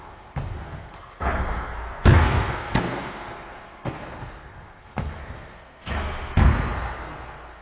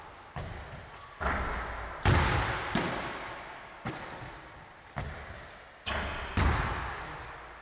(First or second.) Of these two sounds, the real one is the second